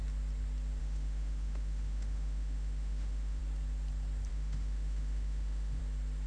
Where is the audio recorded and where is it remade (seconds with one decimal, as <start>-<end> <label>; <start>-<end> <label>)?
0.0-0.8 recorded; 0.8-3.4 remade; 3.4-4.3 recorded; 4.3-5.8 remade; 5.8-6.3 recorded